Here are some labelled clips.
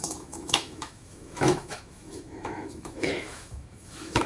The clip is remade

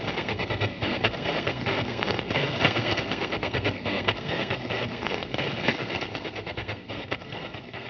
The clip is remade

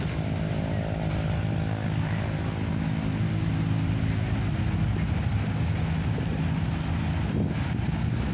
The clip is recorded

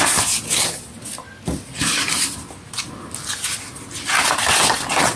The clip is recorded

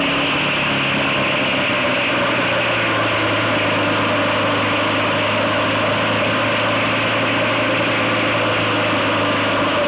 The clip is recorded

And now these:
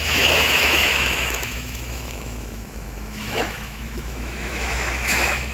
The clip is remade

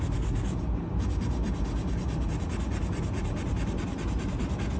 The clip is recorded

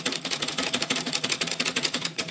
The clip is remade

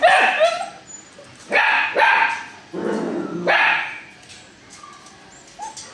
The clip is recorded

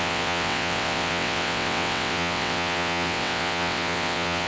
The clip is remade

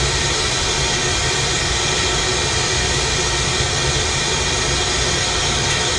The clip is recorded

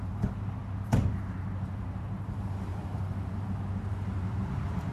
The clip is remade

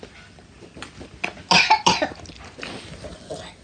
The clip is recorded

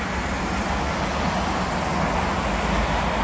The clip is recorded